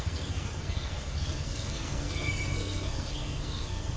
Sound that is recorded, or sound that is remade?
remade